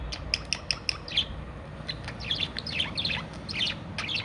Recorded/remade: recorded